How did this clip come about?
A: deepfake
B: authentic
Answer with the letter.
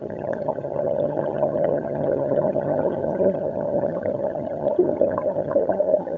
A